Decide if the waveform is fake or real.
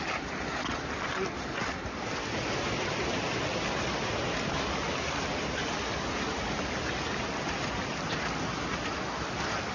real